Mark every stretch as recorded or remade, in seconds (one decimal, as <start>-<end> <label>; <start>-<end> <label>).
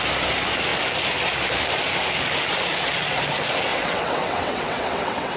0.0-3.7 recorded; 3.7-5.4 remade